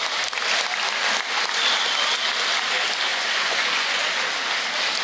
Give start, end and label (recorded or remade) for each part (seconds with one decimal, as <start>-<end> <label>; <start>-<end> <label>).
0.0-3.1 recorded; 3.1-4.0 remade; 4.0-5.0 recorded